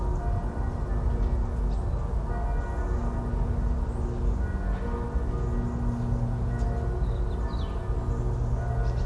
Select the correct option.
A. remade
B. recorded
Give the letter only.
B